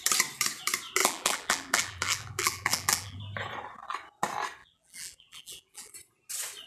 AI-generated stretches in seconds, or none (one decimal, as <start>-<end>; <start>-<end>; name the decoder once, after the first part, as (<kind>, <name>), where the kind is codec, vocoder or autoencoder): 1.0-3.2 (vocoder, BigVGAN v2); 4.6-5.9